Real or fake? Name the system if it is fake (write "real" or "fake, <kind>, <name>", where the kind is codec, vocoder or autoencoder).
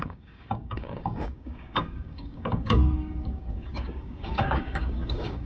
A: fake, codec, DAC